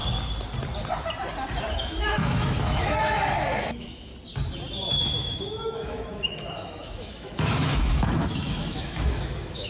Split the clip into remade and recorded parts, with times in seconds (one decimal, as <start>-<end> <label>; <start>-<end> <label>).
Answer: 0.0-1.8 recorded; 1.8-4.1 remade; 4.1-4.9 recorded; 4.9-9.7 remade

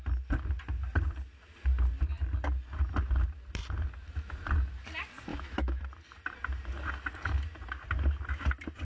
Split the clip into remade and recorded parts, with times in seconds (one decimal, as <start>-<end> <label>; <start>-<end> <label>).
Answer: 0.0-5.3 recorded; 5.3-5.8 remade; 5.8-8.8 recorded